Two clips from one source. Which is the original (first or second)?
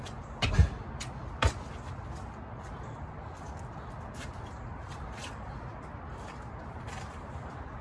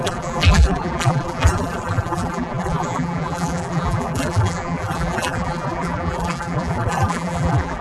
first